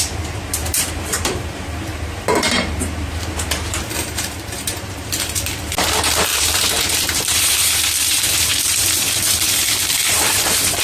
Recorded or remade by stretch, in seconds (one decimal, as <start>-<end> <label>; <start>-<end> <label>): 0.0-0.6 recorded; 0.6-5.4 remade; 5.4-6.3 recorded; 6.3-10.8 remade